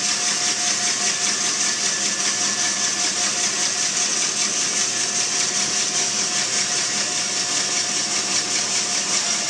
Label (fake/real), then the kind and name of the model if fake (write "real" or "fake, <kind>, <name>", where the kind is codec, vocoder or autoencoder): real